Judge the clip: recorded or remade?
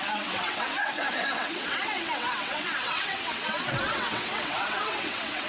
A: remade